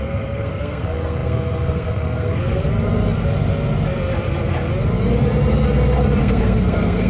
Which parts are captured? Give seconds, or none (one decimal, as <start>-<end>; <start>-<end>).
2.6-6.2